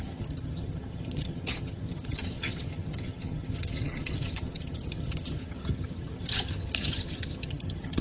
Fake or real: fake